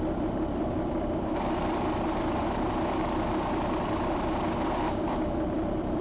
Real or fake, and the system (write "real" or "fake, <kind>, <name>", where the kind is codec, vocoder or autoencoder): fake, vocoder, BigVGAN v2